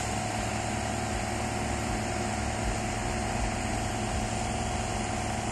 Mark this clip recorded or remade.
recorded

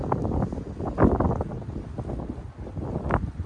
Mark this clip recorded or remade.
recorded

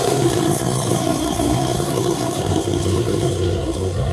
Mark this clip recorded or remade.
remade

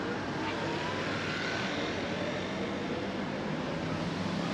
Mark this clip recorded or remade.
recorded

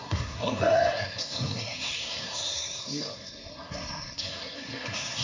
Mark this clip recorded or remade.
remade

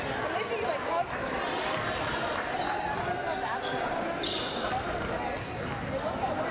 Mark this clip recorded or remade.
recorded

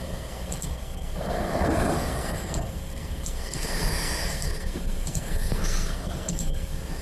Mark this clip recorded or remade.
remade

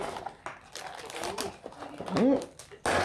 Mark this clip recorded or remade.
recorded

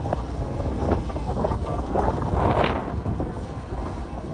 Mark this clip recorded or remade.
remade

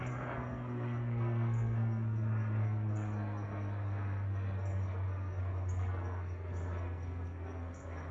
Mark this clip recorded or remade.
remade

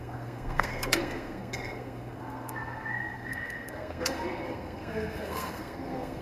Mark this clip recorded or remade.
remade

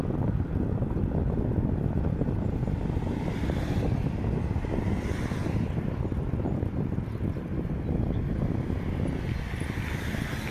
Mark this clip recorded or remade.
recorded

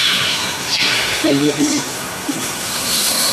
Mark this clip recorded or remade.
remade